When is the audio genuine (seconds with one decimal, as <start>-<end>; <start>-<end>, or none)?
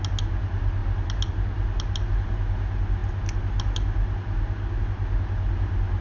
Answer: 0.0-6.0